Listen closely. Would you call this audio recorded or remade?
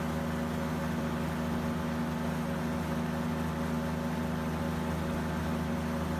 recorded